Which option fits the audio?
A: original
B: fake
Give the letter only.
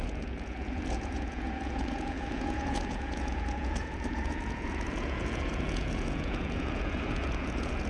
B